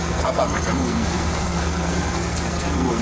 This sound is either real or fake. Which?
fake